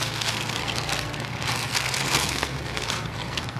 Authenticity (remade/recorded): remade